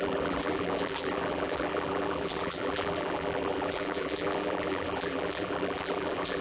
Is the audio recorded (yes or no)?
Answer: no